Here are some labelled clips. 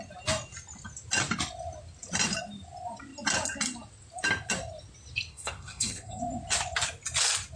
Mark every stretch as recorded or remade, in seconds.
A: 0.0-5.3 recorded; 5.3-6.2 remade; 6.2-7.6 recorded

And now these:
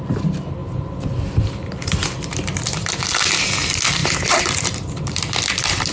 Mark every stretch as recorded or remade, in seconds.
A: 0.0-5.9 recorded

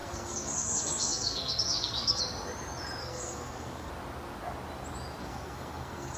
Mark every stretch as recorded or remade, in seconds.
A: 0.0-2.2 remade; 2.2-3.0 recorded; 3.0-3.9 remade; 3.9-5.2 recorded; 5.2-6.2 remade